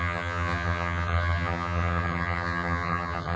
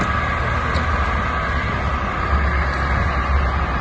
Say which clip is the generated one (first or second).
first